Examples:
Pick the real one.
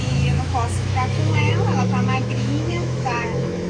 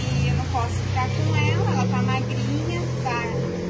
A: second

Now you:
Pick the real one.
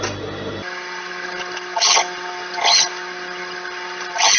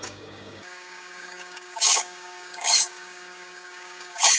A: first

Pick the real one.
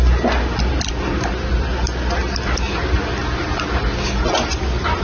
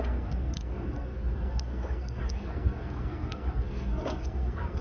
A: first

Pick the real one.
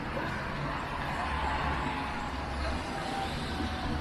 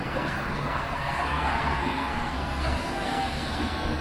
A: first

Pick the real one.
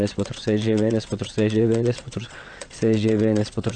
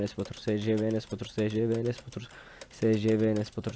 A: second